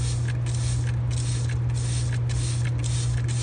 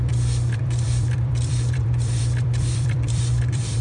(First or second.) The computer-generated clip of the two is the second